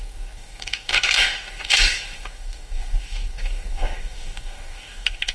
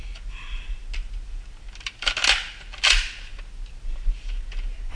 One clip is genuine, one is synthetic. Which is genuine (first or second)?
second